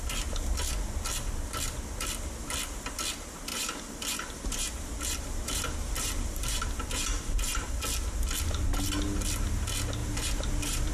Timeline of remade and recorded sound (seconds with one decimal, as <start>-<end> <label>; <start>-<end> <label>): 0.0-3.5 recorded; 3.5-7.7 remade; 7.7-10.0 recorded; 10.0-10.9 remade